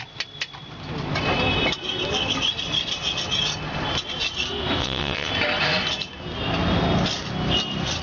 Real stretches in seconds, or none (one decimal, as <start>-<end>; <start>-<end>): 0.0-4.8; 5.3-8.0